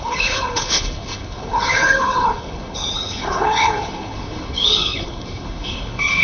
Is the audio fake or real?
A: fake